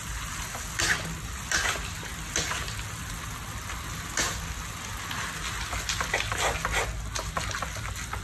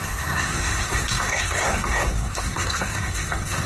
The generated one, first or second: second